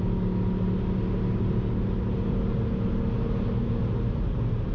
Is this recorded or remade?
recorded